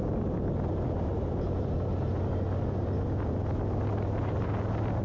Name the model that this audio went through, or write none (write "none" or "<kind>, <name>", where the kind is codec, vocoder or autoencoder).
none